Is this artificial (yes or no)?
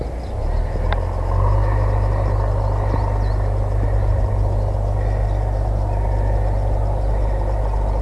no